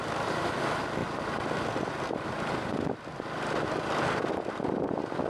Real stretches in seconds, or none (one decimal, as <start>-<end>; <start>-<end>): 0.0-5.3